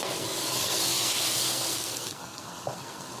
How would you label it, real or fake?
fake